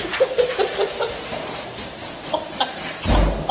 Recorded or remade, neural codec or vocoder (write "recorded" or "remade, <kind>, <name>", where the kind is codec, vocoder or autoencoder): recorded